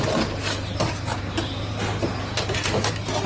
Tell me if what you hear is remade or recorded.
recorded